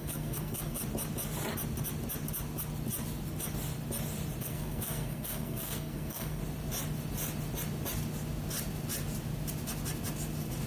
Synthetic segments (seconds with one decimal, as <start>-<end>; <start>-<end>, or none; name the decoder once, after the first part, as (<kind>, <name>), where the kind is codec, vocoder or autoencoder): 0.0-0.8 (codec, SNAC); 4.4-6.4